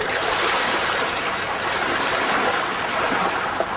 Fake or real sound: real